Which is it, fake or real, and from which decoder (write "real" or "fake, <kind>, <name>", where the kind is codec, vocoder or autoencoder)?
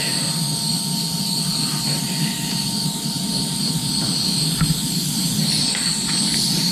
real